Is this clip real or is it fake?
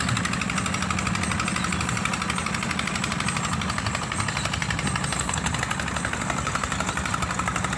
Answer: real